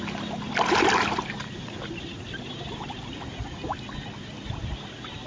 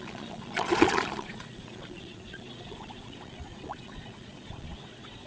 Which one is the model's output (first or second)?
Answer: second